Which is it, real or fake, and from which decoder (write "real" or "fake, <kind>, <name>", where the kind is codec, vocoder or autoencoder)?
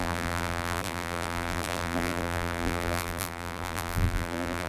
fake, vocoder, BigVGAN v2